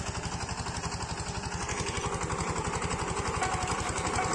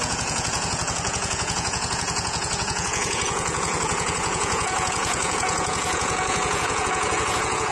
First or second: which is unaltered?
first